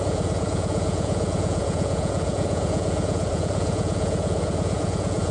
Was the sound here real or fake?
fake